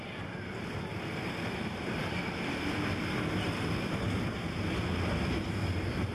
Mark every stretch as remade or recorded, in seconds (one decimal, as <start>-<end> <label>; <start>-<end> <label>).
0.0-0.9 recorded; 0.9-2.8 remade; 2.8-6.1 recorded